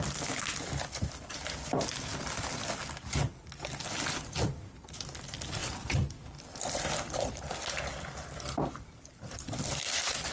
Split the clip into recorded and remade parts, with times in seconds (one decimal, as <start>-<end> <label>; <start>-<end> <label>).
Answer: 0.0-5.6 recorded; 5.6-10.3 remade